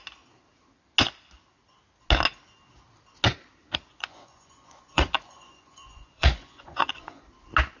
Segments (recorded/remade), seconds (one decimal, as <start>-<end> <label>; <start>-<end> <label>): 0.0-3.9 recorded; 3.9-7.2 remade; 7.2-7.8 recorded